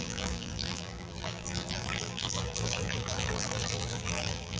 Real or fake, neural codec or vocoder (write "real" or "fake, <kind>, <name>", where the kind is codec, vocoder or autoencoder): fake, vocoder, BigVGAN v2